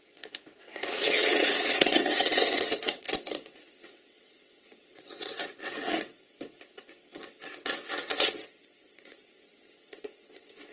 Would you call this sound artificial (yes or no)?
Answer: yes